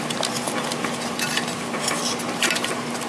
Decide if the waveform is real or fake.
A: real